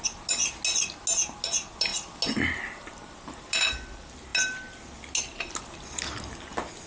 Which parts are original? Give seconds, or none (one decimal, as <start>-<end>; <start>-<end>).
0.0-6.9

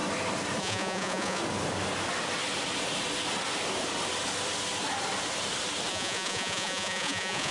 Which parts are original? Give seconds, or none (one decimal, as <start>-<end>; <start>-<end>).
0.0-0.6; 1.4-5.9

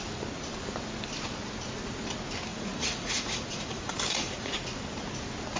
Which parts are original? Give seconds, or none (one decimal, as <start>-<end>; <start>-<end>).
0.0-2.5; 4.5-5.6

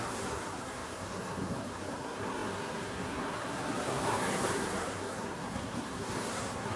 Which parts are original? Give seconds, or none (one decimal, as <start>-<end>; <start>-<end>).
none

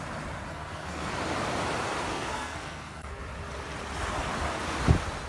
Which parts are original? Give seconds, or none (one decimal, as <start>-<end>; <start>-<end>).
0.0-0.5; 1.1-2.1; 3.2-5.3

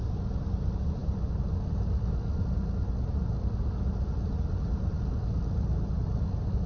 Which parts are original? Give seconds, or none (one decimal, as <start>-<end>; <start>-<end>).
0.0-6.7

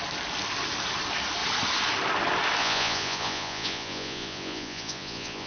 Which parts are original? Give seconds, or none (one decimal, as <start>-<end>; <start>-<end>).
0.0-2.6

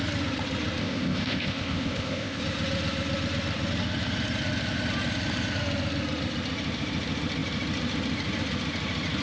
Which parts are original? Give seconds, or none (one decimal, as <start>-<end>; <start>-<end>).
0.0-0.8; 2.4-9.2